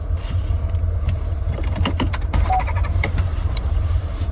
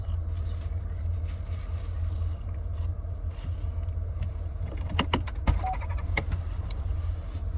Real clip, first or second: second